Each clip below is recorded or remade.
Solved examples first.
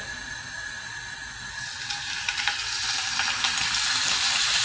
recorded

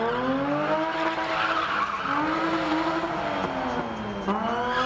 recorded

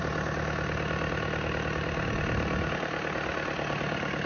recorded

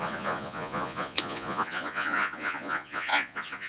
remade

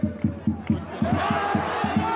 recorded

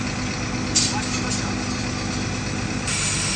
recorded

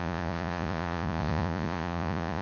remade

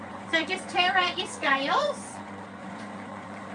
remade